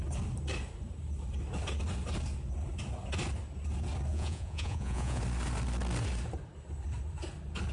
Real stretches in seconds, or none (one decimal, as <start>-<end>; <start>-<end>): 0.0-4.1; 5.2-7.7